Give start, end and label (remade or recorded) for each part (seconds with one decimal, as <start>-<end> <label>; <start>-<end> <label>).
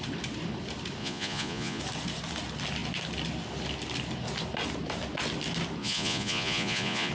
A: 0.0-1.0 recorded; 1.0-1.8 remade; 1.8-5.8 recorded; 5.8-7.1 remade